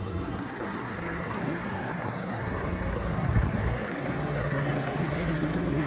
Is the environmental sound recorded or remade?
remade